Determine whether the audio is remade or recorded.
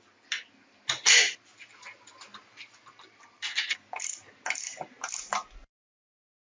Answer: recorded